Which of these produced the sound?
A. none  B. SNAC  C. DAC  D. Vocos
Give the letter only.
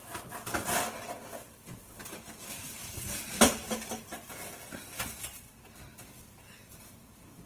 A